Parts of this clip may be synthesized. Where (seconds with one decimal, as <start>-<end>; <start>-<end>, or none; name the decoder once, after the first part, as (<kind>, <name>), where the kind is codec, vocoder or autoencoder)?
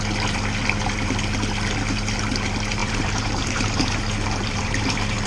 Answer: 2.8-5.3 (vocoder, BigVGAN v2)